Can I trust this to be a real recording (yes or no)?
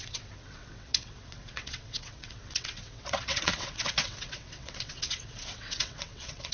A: no